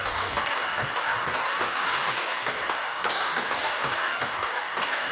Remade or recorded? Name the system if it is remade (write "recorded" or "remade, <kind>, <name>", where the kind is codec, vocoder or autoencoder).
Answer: remade, codec, DAC